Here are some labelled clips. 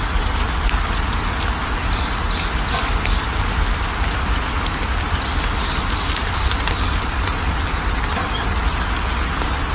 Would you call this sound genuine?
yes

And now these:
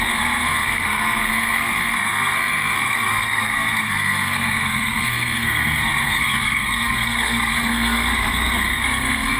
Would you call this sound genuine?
no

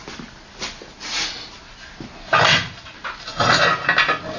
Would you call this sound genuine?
yes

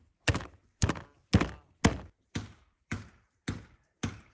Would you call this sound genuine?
yes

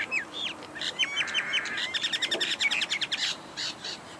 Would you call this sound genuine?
no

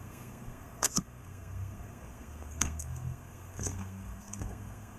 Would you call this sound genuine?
no